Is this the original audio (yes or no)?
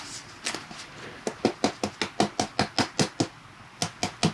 yes